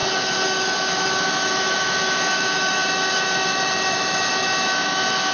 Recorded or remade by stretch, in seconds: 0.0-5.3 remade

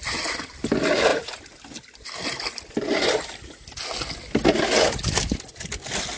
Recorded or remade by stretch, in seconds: 0.0-1.1 recorded; 1.1-3.2 remade; 3.2-6.2 recorded

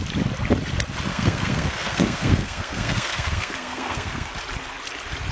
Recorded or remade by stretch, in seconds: 0.0-1.1 recorded; 1.1-4.3 remade; 4.3-5.3 recorded

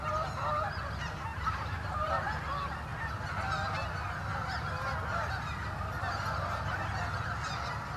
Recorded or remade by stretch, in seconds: 0.0-1.3 recorded; 1.3-2.1 remade; 2.1-8.0 recorded

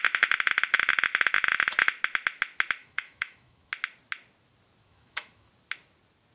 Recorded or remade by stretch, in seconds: 0.0-2.8 recorded; 2.8-3.7 remade; 3.7-4.8 recorded; 4.8-5.5 remade; 5.5-6.3 recorded